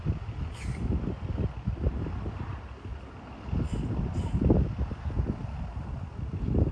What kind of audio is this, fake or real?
real